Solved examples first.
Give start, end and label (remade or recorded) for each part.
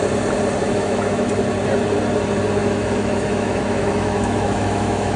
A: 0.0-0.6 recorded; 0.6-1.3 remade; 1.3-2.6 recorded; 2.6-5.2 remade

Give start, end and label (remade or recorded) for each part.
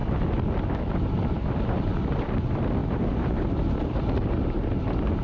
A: 0.0-5.2 recorded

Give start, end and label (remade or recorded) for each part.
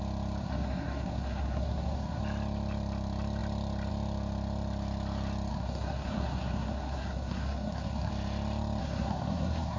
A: 0.0-0.4 recorded; 0.4-2.2 remade; 2.2-5.5 recorded; 5.5-8.1 remade; 8.1-8.8 recorded; 8.8-9.8 remade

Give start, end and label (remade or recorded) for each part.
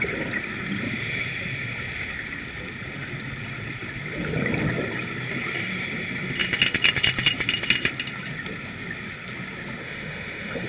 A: 0.0-9.8 recorded; 9.8-10.7 remade